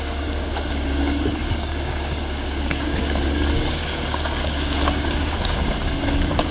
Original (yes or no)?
no